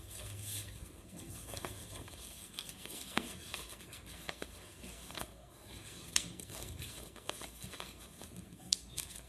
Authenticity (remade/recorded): remade